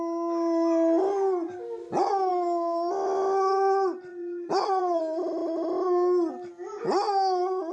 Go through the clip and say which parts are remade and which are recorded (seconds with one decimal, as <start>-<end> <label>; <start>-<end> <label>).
0.0-4.1 recorded; 4.1-5.0 remade; 5.0-7.7 recorded